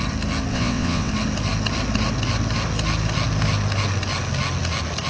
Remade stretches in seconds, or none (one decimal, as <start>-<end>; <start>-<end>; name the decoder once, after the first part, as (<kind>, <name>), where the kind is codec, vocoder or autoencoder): 0.5-1.1 (vocoder, WaveNeXt)